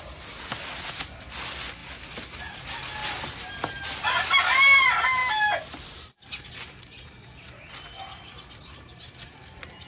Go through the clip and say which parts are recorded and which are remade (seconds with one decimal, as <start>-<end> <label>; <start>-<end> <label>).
0.0-9.9 recorded